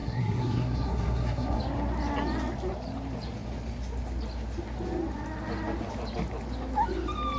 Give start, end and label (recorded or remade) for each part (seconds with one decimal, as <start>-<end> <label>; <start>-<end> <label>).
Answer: 0.0-1.6 remade; 1.6-7.4 recorded